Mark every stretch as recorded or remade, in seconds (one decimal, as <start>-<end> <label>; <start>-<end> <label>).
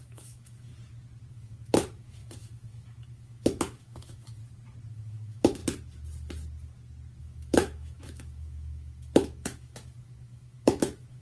0.0-0.7 remade; 0.7-1.3 recorded; 1.3-4.4 remade; 4.4-4.9 recorded; 4.9-5.6 remade; 5.6-7.2 recorded; 7.2-11.2 remade